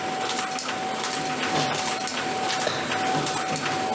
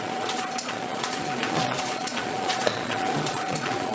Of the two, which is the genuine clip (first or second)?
first